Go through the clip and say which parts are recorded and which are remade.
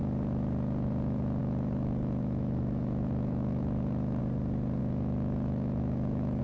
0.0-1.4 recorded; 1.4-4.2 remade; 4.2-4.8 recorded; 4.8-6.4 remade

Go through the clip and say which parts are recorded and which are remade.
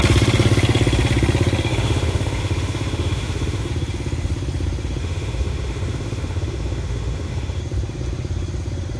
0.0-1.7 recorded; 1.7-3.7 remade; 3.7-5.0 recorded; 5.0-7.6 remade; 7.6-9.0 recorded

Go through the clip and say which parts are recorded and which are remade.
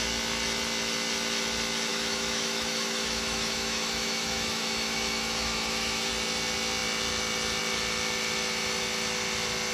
0.0-1.9 recorded; 1.9-6.1 remade; 6.1-9.7 recorded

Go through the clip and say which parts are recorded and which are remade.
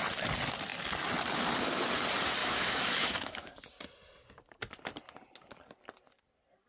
0.0-2.4 recorded; 2.4-3.5 remade; 3.5-6.7 recorded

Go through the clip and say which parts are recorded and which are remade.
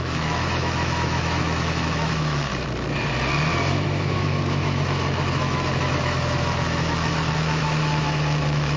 0.0-2.5 remade; 2.5-3.7 recorded; 3.7-8.8 remade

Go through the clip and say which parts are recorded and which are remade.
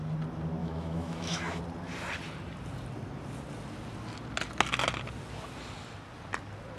0.0-0.6 recorded; 0.6-1.6 remade; 1.6-6.8 recorded